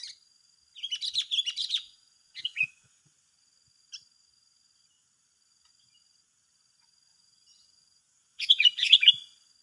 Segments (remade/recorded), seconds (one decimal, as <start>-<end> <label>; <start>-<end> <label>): 0.0-1.6 recorded; 1.6-3.0 remade; 3.0-7.1 recorded; 7.1-9.1 remade; 9.1-9.6 recorded